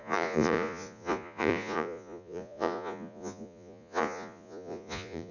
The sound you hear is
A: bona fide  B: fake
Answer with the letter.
B